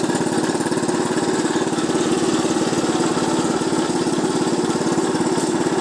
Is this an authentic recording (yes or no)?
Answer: yes